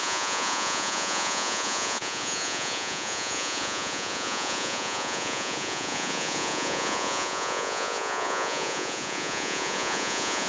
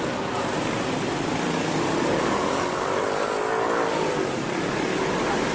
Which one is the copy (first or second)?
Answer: first